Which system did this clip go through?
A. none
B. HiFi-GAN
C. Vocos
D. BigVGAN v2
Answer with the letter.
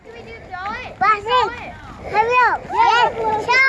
A